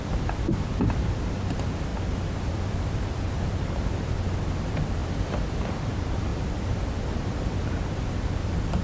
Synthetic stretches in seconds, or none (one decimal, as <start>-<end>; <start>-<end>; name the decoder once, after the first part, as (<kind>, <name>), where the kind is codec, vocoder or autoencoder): 0.0-1.9 (vocoder, BigVGAN v2); 2.4-5.0; 5.7-8.8